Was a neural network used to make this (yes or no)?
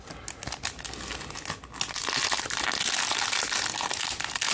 no